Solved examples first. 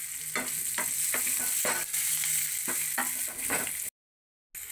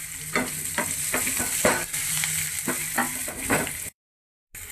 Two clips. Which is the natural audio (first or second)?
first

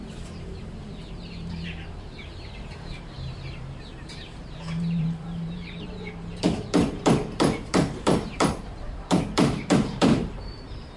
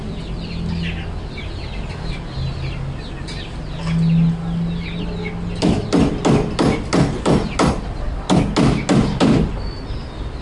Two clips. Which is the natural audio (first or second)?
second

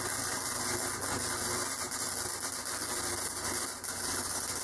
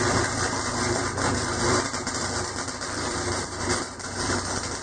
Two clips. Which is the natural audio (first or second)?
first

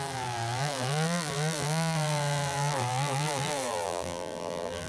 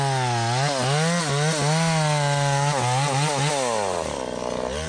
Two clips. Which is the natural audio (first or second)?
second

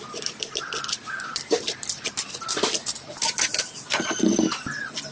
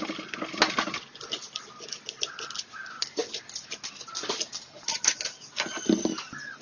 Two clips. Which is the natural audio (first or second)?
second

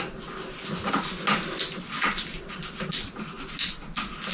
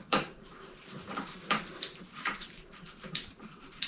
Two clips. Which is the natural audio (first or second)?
first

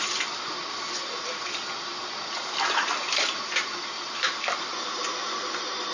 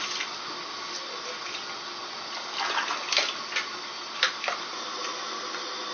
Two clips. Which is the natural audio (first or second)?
second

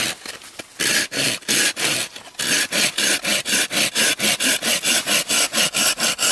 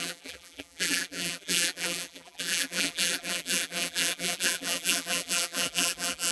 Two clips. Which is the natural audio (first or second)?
first